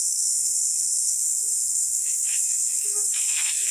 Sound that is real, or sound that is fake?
fake